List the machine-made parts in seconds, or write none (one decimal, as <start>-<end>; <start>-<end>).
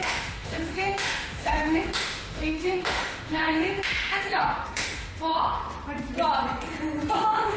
0.0-5.6; 7.1-7.6